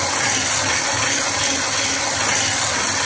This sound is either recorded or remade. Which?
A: recorded